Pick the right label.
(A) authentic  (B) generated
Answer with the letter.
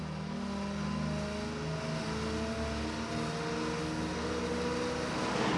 A